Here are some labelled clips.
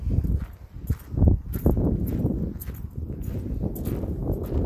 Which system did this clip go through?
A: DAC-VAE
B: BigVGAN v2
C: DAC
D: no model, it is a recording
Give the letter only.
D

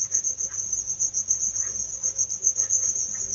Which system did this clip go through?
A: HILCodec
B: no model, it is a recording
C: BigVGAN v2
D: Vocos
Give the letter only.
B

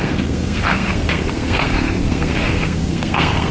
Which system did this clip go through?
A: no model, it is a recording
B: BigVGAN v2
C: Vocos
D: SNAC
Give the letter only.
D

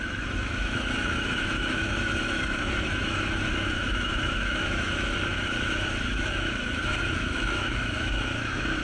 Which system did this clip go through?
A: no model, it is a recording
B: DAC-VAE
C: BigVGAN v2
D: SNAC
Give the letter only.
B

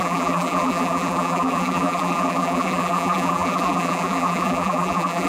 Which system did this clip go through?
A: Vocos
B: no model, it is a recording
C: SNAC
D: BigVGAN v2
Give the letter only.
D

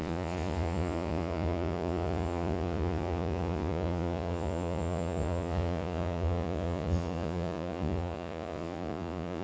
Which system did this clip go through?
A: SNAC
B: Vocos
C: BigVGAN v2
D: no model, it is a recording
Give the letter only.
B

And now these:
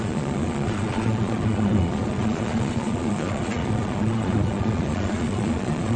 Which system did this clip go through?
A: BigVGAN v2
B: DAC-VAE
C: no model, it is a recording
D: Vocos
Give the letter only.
D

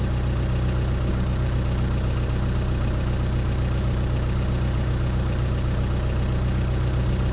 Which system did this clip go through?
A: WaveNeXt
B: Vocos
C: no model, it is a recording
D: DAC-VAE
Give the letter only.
C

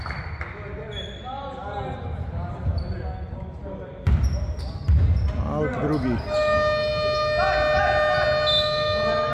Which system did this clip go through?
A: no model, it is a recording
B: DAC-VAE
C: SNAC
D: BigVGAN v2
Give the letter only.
A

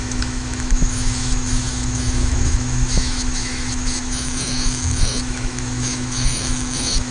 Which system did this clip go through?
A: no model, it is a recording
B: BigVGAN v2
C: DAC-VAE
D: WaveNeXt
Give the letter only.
C